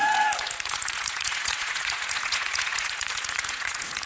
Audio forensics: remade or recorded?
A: remade